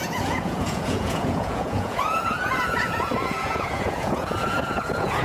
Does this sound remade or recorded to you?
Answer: remade